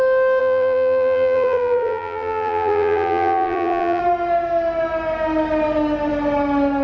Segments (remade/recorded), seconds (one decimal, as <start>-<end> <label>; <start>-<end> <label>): 0.0-0.4 recorded; 0.4-4.0 remade; 4.0-6.8 recorded